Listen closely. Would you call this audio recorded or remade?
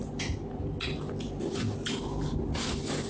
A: recorded